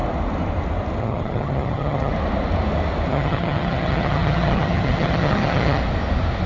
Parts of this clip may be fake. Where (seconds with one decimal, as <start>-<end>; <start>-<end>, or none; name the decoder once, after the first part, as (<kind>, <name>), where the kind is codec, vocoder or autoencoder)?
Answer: 1.0-2.1 (vocoder, HiFi-GAN); 3.1-5.8